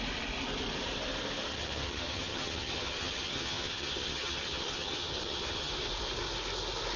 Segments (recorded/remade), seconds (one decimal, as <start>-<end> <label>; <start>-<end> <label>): 0.0-1.5 recorded; 1.5-5.7 remade; 5.7-7.0 recorded